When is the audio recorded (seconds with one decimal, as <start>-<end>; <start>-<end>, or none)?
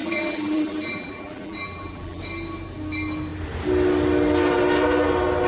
2.2-5.5